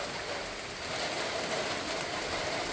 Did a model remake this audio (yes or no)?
no